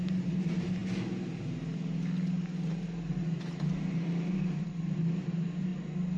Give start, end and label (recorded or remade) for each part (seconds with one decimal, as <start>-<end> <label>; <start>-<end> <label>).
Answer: 0.0-6.2 recorded